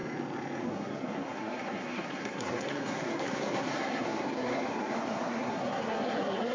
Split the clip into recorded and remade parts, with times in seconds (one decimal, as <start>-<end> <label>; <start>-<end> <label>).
0.0-0.6 recorded; 0.6-6.5 remade